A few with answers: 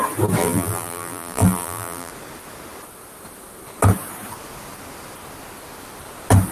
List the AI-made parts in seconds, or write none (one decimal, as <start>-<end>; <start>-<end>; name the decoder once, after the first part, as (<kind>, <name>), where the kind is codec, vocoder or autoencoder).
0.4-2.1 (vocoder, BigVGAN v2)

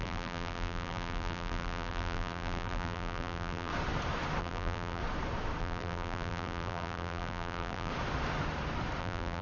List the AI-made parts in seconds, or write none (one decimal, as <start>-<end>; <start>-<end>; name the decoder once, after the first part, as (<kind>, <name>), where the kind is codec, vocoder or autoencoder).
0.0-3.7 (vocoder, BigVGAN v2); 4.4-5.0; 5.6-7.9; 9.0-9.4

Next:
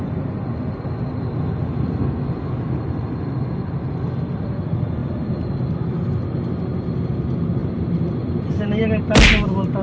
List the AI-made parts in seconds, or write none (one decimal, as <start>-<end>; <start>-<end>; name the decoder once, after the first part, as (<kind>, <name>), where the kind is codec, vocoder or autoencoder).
7.6-8.8 (vocoder, BigVGAN v2)

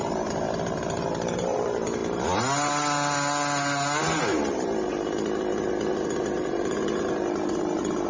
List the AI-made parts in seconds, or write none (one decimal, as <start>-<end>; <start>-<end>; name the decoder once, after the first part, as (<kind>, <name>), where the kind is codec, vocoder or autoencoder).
0.0-2.0 (vocoder, BigVGAN v2); 4.2-4.9; 5.9-8.1